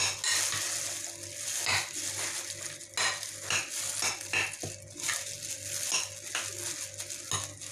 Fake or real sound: real